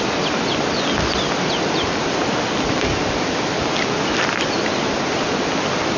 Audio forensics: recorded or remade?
recorded